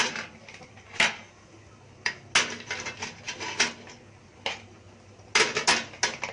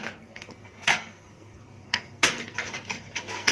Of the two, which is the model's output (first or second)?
second